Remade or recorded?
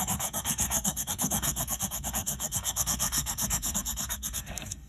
remade